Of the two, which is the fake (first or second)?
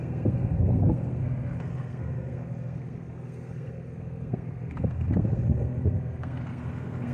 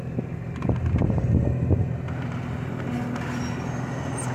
first